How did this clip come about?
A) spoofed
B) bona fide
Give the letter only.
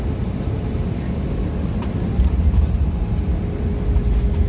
B